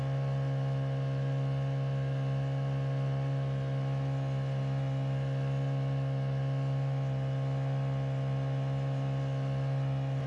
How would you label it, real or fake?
real